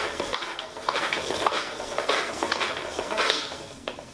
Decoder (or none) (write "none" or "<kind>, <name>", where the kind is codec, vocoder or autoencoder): codec, SNAC